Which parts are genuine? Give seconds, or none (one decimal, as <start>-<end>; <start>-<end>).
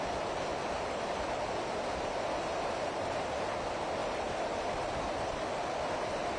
0.0-6.4